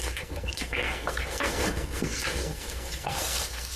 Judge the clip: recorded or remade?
remade